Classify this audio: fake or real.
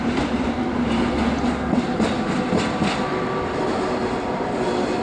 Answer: real